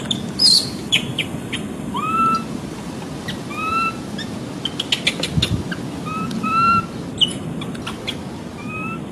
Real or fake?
real